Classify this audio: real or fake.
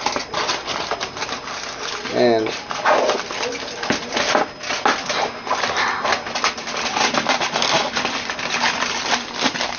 real